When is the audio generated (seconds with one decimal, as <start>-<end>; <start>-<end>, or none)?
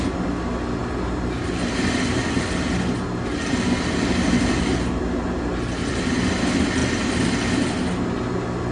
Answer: none